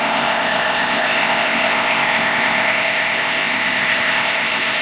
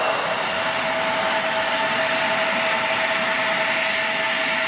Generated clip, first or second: first